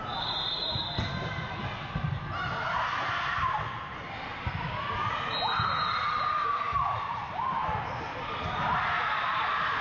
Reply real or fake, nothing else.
real